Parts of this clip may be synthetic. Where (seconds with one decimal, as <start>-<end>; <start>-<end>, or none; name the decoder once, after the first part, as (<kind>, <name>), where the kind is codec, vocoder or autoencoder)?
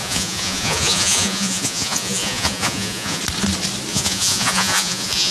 0.0-3.2 (vocoder, Vocos); 3.9-5.3